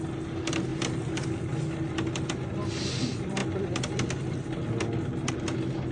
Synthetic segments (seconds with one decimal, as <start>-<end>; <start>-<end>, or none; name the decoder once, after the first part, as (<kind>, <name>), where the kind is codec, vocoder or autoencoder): none

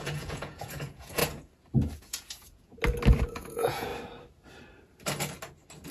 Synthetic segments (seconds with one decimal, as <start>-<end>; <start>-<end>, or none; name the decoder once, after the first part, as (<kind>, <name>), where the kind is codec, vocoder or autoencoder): 0.0-1.2 (vocoder, Vocos); 2.0-2.7; 3.3-3.9

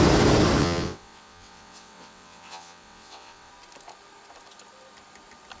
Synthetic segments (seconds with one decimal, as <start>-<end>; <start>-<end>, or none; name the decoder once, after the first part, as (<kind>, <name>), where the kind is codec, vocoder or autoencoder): 0.6-3.5 (vocoder, WaveNeXt)